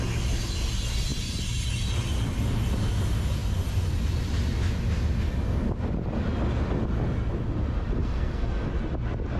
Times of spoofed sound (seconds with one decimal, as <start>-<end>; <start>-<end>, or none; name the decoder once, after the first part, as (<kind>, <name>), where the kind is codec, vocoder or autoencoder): 8.0-8.7 (codec, SNAC)